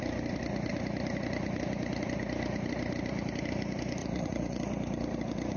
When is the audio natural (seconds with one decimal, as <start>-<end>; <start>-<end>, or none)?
0.0-4.0; 4.6-5.6